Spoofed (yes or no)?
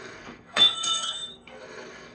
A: yes